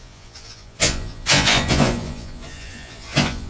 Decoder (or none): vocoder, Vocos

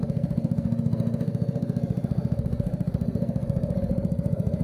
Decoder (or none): codec, SNAC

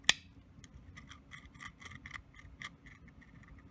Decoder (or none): none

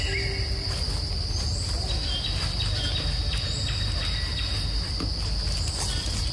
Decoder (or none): none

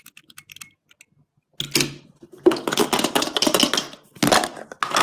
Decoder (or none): none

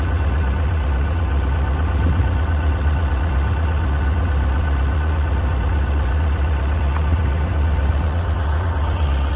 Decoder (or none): vocoder, Vocos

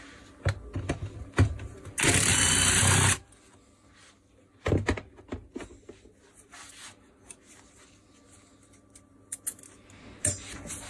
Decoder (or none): none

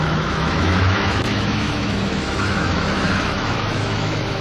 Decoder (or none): autoencoder, DAC-VAE